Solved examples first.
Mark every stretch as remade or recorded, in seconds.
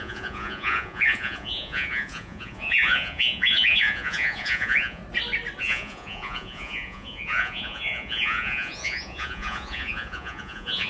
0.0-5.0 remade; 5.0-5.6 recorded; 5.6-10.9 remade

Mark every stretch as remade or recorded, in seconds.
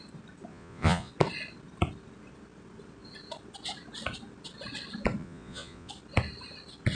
0.0-0.5 recorded; 0.5-1.1 remade; 1.1-5.2 recorded; 5.2-5.9 remade; 5.9-6.9 recorded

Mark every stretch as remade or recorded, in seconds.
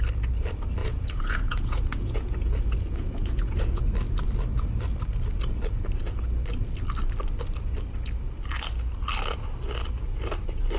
0.0-0.8 recorded; 0.8-3.8 remade; 3.8-10.8 recorded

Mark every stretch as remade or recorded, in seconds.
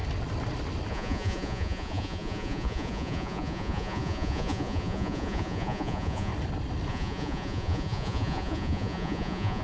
0.0-0.9 recorded; 0.9-6.3 remade; 6.3-6.9 recorded; 6.9-9.6 remade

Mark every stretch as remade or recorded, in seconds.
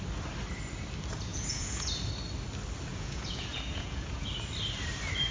0.0-1.3 recorded; 1.3-1.9 remade; 1.9-2.9 recorded; 2.9-4.3 remade; 4.3-5.3 recorded